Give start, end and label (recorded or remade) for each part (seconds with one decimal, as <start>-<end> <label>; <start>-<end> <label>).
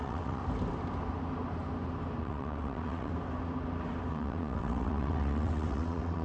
0.0-0.4 remade; 0.4-2.2 recorded; 2.2-3.1 remade; 3.1-4.1 recorded; 4.1-6.2 remade